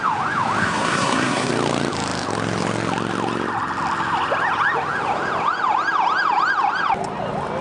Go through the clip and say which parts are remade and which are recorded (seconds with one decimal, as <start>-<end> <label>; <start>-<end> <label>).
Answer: 0.0-0.6 recorded; 0.6-1.5 remade; 1.5-7.6 recorded